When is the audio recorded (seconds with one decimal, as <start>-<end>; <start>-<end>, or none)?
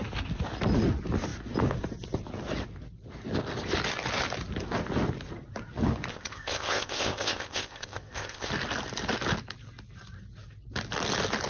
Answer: 0.0-6.1; 8.5-11.5